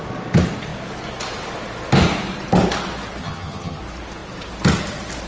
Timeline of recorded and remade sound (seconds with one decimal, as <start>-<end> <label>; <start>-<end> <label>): 0.0-3.2 recorded; 3.2-3.8 remade; 3.8-5.3 recorded